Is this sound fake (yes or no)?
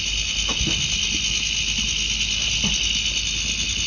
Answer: no